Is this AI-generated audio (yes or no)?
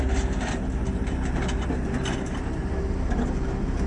no